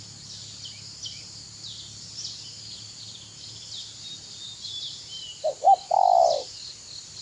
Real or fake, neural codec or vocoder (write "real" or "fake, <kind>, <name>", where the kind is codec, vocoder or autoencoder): real